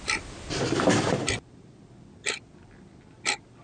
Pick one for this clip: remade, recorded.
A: recorded